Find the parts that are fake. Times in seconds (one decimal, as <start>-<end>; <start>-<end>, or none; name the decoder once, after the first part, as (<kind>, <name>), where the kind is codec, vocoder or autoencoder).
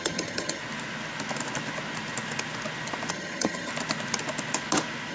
0.0-0.6 (vocoder, HiFi-GAN); 3.1-3.7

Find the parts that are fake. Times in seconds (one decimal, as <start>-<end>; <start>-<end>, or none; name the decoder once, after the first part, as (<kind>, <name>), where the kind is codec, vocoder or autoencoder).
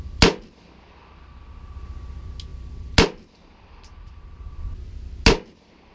none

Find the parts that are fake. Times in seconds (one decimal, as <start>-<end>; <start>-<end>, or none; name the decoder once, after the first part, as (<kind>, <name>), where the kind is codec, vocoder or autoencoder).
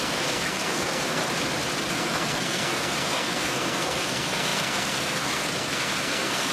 0.0-1.2 (codec, SNAC); 1.9-6.5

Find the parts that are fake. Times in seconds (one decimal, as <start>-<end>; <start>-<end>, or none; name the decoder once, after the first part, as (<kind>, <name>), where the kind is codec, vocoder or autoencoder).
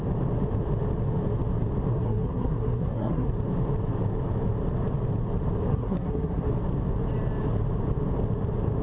1.9-3.3 (codec, SNAC); 5.7-6.5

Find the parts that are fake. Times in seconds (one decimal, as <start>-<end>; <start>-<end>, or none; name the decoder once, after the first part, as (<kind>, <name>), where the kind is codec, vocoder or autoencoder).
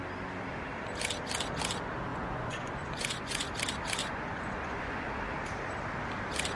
2.1-3.5 (vocoder, Vocos); 4.0-5.1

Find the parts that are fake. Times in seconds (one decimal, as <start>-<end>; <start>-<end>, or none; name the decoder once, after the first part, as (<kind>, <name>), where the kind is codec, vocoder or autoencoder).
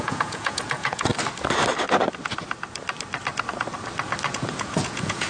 0.0-1.1 (vocoder, Vocos); 4.3-5.3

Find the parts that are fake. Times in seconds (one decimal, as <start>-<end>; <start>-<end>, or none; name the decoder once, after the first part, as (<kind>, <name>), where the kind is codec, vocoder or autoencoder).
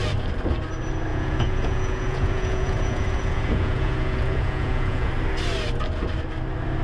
1.1-5.1 (vocoder, Vocos)